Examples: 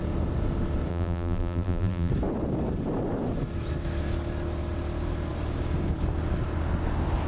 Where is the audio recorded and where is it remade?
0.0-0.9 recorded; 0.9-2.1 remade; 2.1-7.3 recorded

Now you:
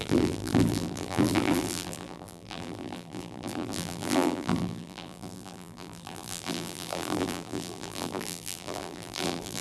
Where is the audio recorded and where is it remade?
0.0-9.6 remade

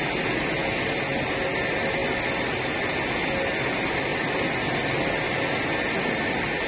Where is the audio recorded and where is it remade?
0.0-6.7 recorded

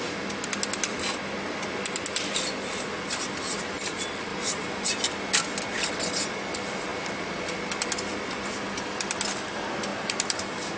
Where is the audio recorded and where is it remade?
0.0-4.3 recorded; 4.3-4.9 remade; 4.9-9.9 recorded; 9.9-10.8 remade